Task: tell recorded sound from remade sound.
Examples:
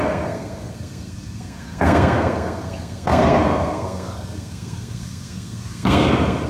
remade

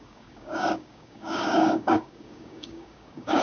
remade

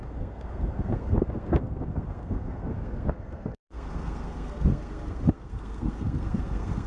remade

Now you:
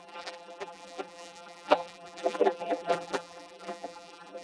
remade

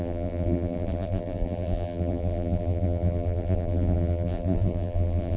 remade